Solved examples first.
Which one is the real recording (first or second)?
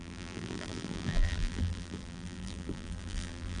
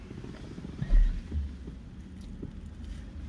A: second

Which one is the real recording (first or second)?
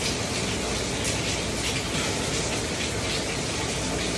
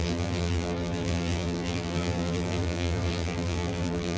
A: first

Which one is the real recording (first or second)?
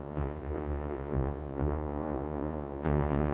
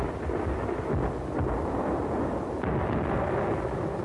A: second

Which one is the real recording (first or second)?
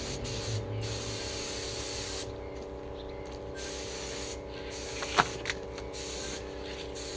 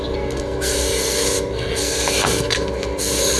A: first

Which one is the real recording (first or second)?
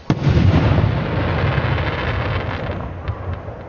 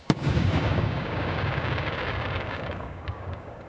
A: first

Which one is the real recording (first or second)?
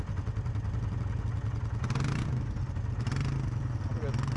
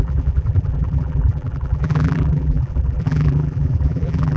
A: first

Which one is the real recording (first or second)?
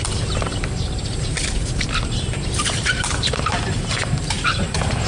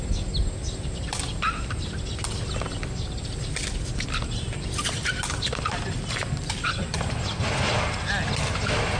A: second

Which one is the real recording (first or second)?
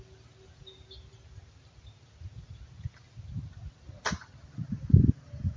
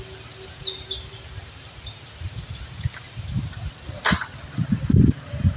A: first